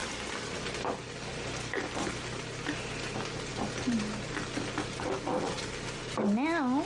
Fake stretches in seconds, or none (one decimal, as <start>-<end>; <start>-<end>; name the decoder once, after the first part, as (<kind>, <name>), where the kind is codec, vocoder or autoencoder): none